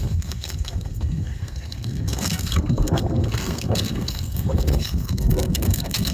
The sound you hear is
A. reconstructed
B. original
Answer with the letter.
A